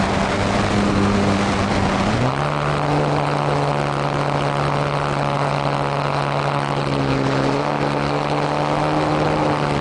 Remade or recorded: recorded